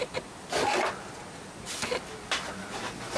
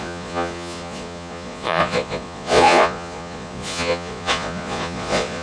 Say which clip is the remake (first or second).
second